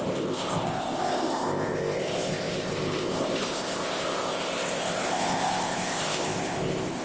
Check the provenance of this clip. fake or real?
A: fake